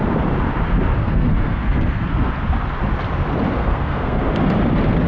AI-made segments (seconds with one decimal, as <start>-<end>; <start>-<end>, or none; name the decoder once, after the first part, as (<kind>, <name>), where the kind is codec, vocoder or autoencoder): 1.0-2.3 (codec, SNAC); 3.6-4.3